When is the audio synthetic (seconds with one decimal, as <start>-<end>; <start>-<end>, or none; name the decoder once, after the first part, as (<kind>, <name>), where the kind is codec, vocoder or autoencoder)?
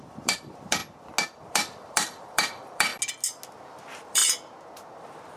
0.0-0.8 (vocoder, BigVGAN v2); 1.4-2.9; 3.7-4.2; 5.0-5.4